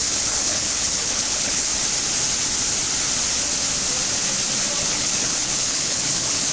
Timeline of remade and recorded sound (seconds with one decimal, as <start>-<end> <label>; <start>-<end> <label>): 0.0-1.7 remade; 1.7-4.8 recorded; 4.8-6.5 remade